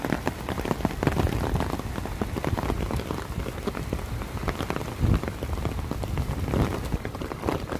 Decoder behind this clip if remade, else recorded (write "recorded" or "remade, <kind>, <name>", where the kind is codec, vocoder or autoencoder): recorded